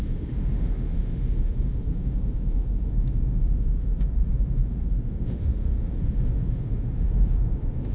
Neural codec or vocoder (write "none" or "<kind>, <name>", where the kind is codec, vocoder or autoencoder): autoencoder, DAC-VAE